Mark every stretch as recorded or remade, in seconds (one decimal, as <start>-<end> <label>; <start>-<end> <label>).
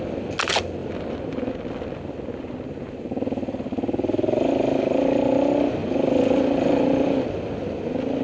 0.0-0.8 recorded; 0.8-1.5 remade; 1.5-5.8 recorded; 5.8-7.2 remade; 7.2-8.2 recorded